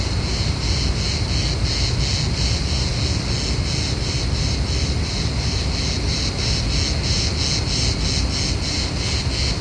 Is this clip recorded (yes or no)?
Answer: yes